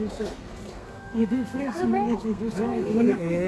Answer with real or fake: fake